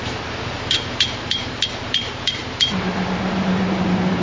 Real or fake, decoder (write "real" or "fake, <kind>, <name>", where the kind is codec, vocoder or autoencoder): fake, vocoder, BigVGAN v2